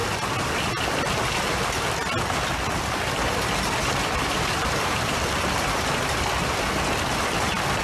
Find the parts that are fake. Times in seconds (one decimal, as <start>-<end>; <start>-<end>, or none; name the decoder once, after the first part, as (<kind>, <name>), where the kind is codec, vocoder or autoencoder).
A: 3.8-6.2 (vocoder, BigVGAN v2)